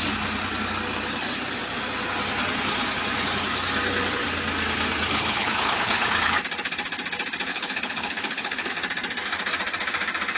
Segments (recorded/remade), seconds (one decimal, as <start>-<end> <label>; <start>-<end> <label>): 0.0-5.1 recorded; 5.1-6.1 remade; 6.1-7.5 recorded; 7.5-8.7 remade; 8.7-10.4 recorded